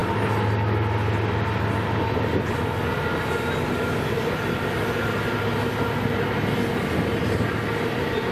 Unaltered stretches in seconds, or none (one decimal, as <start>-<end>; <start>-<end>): 0.0-8.3